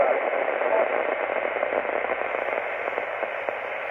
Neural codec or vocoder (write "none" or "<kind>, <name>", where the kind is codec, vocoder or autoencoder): none